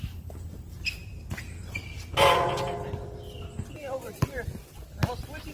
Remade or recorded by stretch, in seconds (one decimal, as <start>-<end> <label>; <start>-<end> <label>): 0.0-5.5 remade